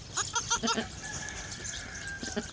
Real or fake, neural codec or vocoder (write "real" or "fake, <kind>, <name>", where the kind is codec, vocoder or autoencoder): real